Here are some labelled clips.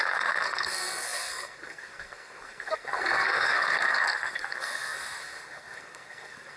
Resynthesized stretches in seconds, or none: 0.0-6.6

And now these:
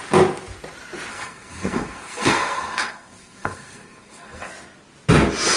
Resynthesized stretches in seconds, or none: 1.1-4.5

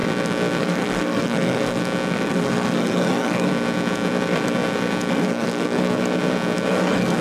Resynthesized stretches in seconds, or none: 0.6-1.8; 2.3-3.5; 5.1-6.0; 6.7-7.2